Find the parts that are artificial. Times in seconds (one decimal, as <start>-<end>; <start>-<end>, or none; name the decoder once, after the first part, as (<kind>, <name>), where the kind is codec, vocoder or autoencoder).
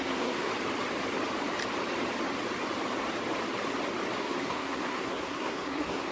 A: 0.0-0.5 (codec, SNAC); 4.2-6.1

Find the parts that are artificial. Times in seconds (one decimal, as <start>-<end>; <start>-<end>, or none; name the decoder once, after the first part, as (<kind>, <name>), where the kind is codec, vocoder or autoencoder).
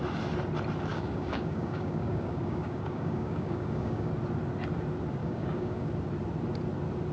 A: 0.9-4.1 (codec, DAC); 5.2-5.9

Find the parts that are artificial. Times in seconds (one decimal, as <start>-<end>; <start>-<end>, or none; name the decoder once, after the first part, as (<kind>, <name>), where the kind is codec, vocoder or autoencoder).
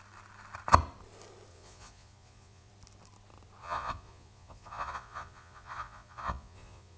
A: 1.5-2.7 (vocoder, Vocos); 3.6-7.0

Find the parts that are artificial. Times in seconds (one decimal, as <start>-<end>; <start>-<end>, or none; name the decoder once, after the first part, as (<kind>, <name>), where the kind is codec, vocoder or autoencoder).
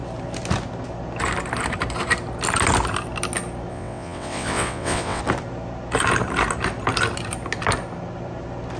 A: 3.7-5.2 (vocoder, WaveNeXt)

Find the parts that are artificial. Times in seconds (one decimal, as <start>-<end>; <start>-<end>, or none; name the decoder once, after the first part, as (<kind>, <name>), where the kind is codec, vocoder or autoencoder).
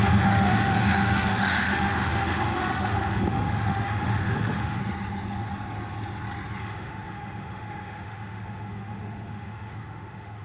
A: 0.0-4.8 (autoencoder, DAC-VAE); 6.6-10.4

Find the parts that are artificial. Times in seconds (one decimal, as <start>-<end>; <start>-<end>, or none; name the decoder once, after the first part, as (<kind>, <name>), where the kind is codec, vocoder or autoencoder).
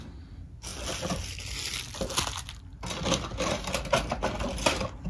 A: none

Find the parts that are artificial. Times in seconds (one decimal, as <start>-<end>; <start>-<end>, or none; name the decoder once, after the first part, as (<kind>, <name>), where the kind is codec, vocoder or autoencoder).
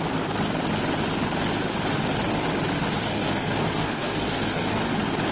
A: 3.1-4.8 (codec, SNAC)